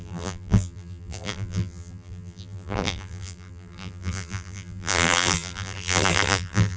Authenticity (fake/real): fake